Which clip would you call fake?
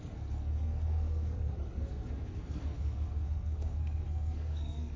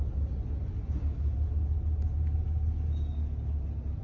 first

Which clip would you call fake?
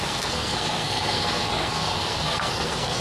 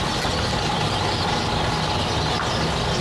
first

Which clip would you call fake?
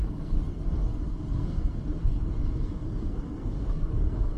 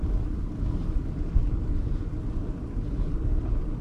first